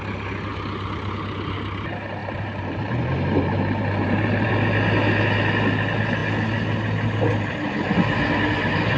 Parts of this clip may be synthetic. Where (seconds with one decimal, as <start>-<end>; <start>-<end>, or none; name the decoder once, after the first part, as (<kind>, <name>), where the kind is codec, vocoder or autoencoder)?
2.2-4.5 (vocoder, BigVGAN v2)